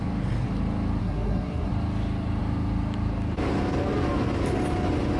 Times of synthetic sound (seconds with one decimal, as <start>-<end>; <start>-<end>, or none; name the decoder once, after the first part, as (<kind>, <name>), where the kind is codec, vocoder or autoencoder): 1.0-1.7 (codec, SNAC)